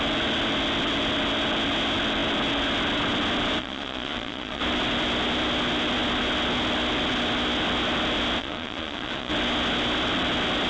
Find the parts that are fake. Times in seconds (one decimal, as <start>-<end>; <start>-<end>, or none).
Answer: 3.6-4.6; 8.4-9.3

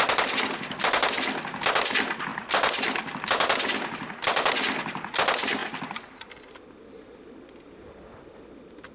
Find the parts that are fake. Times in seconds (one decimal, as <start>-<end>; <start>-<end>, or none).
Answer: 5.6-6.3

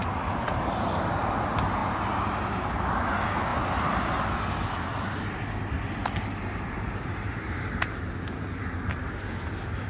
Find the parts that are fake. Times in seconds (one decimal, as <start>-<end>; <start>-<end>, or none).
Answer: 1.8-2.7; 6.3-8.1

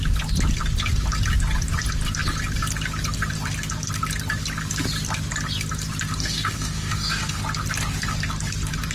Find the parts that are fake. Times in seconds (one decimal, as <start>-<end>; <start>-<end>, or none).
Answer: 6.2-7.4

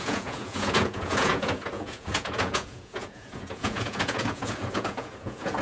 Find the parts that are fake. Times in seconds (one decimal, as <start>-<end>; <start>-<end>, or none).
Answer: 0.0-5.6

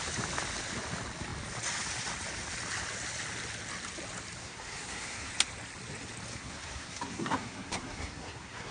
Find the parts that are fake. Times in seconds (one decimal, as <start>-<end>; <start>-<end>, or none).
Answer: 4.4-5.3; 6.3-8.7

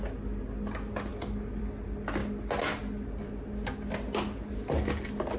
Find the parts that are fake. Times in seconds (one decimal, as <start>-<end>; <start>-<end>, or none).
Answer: none